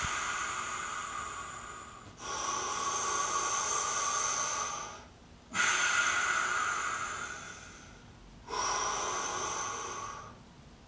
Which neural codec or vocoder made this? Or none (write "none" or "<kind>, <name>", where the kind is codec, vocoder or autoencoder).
none